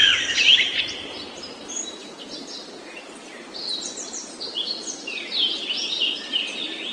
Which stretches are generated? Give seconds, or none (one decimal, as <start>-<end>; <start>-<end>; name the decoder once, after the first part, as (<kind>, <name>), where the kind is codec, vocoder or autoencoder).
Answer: 2.0-5.3 (vocoder, BigVGAN v2)